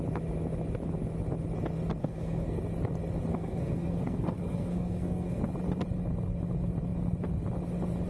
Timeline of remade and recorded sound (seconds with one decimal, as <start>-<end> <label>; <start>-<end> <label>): 0.0-2.0 recorded; 2.0-2.6 remade; 2.6-3.3 recorded; 3.3-5.4 remade; 5.4-8.1 recorded